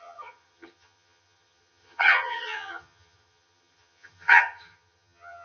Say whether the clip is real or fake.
fake